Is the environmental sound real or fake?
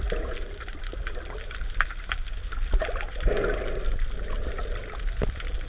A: real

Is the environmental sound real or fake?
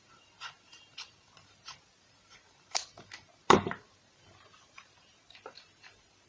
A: fake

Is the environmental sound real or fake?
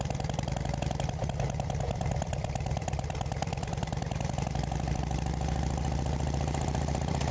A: fake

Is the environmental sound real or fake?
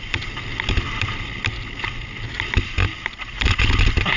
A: real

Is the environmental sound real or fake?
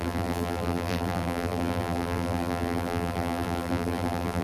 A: fake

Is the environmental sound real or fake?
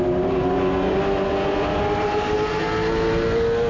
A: real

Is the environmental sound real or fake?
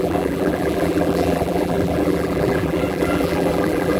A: fake